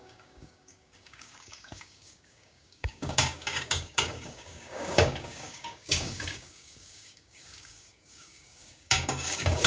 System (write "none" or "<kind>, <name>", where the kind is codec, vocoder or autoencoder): codec, DAC